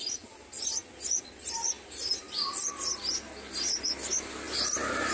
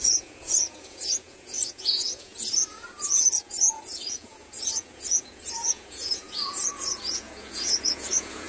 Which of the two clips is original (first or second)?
first